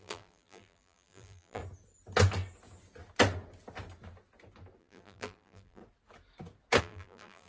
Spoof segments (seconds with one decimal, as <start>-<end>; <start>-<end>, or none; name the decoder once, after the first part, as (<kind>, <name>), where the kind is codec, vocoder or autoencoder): 0.0-1.6 (vocoder, BigVGAN v2); 4.8-5.8; 6.8-7.5